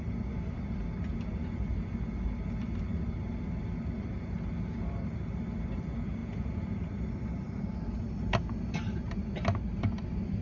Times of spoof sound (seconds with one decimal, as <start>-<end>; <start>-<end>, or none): none